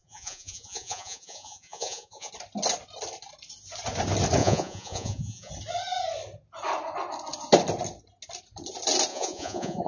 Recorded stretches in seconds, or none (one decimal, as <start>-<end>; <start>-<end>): 2.3-4.4; 5.5-9.1